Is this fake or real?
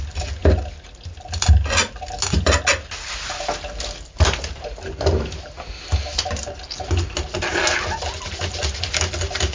real